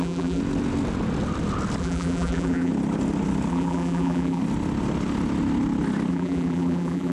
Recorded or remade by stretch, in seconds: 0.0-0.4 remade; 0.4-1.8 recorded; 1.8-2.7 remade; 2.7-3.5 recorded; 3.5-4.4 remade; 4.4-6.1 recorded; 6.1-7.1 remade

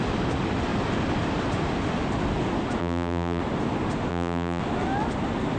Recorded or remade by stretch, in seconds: 0.0-2.8 recorded; 2.8-3.4 remade; 3.4-4.1 recorded; 4.1-4.6 remade; 4.6-5.6 recorded

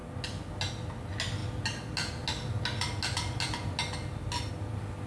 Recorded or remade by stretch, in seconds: 0.0-5.1 recorded

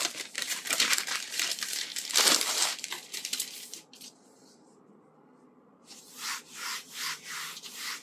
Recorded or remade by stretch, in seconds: 0.0-1.9 remade; 1.9-3.5 recorded; 3.5-8.0 remade

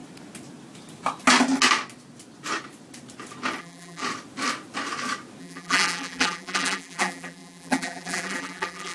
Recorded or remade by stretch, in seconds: 0.0-3.6 recorded; 3.6-4.0 remade; 4.0-5.4 recorded; 5.4-8.9 remade

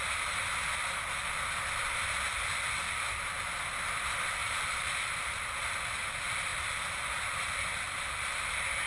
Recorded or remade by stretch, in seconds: 0.0-4.4 recorded; 4.4-5.5 remade; 5.5-8.9 recorded